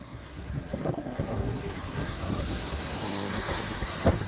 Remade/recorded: remade